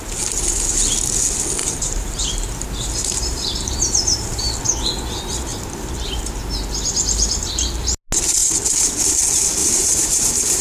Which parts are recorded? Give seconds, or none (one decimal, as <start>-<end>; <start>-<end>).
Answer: 0.0-1.6; 4.6-5.5; 6.4-9.6